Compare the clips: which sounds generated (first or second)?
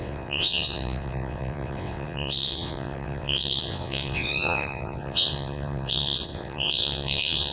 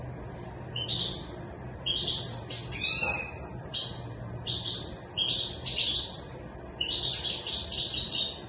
first